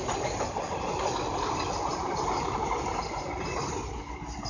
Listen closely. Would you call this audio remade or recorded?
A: recorded